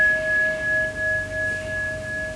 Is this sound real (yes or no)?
yes